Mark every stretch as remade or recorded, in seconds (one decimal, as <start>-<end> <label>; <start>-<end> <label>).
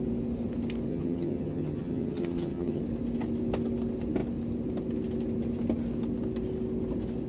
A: 0.0-0.9 recorded; 0.9-2.8 remade; 2.8-7.3 recorded